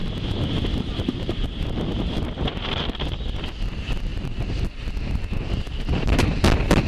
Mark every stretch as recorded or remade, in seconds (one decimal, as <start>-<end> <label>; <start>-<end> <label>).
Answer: 0.0-3.0 remade; 3.0-4.1 recorded; 4.1-6.4 remade; 6.4-6.9 recorded